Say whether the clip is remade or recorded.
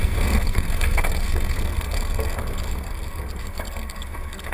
remade